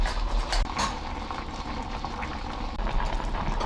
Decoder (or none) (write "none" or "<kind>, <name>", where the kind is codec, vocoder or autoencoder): none